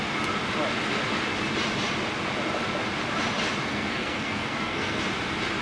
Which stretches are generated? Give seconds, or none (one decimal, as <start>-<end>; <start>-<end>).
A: 3.6-5.0